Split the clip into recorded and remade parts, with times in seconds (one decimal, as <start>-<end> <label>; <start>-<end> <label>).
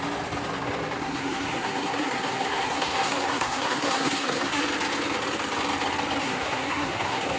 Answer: 0.0-1.0 recorded; 1.0-4.6 remade; 4.6-6.2 recorded; 6.2-7.4 remade